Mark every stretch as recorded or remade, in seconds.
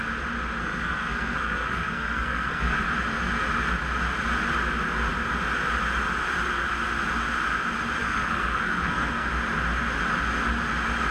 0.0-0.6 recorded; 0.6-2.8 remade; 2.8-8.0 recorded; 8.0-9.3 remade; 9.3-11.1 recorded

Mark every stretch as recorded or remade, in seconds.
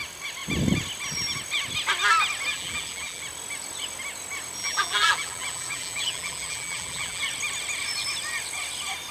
0.0-2.5 recorded; 2.5-3.2 remade; 3.2-4.6 recorded; 4.6-7.2 remade; 7.2-9.1 recorded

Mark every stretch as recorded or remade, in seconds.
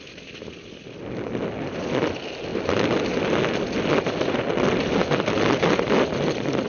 0.0-6.7 recorded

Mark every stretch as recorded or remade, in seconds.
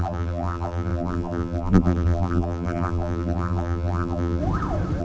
0.0-4.4 remade; 4.4-5.0 recorded